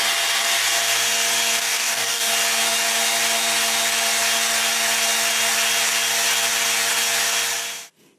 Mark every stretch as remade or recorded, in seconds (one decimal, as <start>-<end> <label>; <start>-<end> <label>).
0.0-1.6 recorded; 1.6-2.3 remade; 2.3-8.2 recorded